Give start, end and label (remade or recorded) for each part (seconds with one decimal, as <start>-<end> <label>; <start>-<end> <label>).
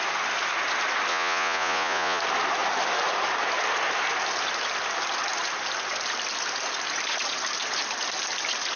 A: 0.0-1.1 recorded; 1.1-2.2 remade; 2.2-8.8 recorded